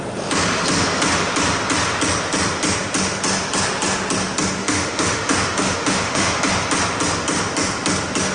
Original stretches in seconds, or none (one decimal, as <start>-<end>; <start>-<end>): 0.0-4.6; 6.4-8.3